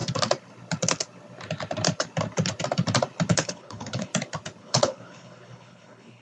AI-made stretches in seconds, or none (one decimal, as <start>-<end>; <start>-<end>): 3.3-4.1; 4.6-6.2